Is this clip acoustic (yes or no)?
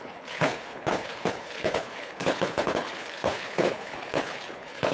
no